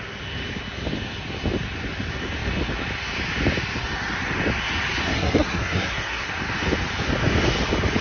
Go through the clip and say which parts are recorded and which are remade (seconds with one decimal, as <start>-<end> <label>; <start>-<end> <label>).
0.0-5.0 recorded; 5.0-6.3 remade; 6.3-8.0 recorded